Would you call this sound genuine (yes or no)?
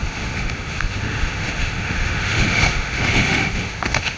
no